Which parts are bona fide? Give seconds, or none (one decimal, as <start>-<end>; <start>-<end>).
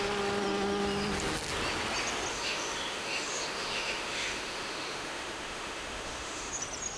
0.0-2.3; 6.5-7.0